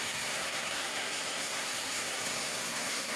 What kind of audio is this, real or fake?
fake